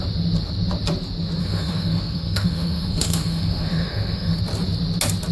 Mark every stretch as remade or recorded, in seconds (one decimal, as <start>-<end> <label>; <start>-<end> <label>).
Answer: 0.0-1.4 recorded; 1.4-4.4 remade; 4.4-5.3 recorded